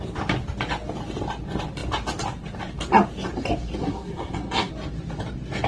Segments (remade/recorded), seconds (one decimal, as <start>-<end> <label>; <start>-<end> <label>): 0.0-3.8 recorded; 3.8-4.7 remade; 4.7-5.7 recorded